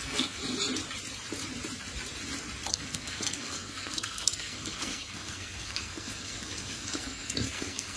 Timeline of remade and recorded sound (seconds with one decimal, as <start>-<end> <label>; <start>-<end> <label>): 0.0-0.4 remade; 0.4-2.7 recorded; 2.7-8.0 remade